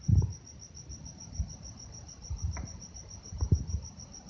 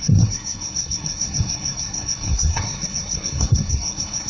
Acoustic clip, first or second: first